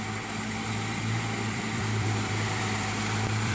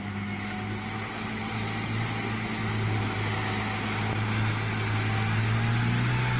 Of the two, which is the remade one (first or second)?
first